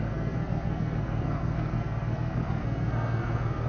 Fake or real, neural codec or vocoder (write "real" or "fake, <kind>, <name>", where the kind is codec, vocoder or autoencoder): fake, codec, SNAC